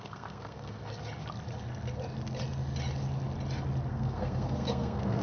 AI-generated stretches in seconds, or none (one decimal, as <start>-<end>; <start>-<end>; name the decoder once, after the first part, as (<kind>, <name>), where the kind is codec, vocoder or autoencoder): 0.0-0.8 (codec, SNAC); 3.9-5.2